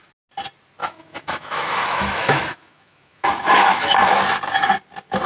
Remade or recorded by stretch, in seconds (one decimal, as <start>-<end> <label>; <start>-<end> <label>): 0.0-0.8 recorded; 0.8-4.0 remade; 4.0-5.3 recorded